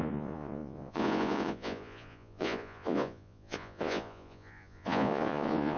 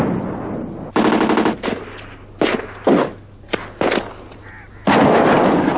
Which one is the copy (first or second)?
first